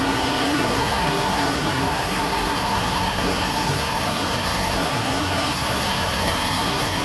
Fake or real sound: fake